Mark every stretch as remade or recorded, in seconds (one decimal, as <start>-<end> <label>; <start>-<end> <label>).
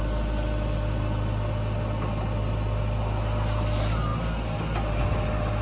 0.0-5.6 recorded